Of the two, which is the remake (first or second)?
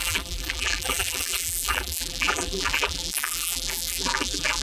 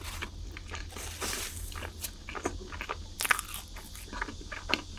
first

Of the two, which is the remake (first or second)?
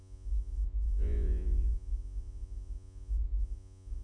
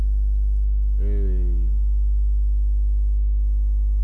first